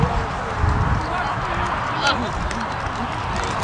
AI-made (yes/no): no